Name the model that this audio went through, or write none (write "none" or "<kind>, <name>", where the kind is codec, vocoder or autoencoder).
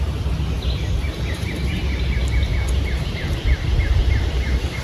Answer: none